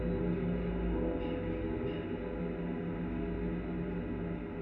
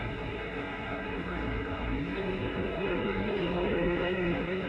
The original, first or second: first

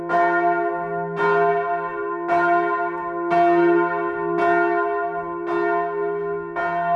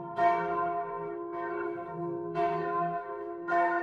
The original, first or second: first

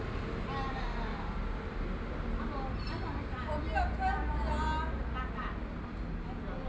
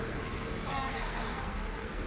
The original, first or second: first